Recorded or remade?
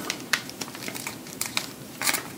remade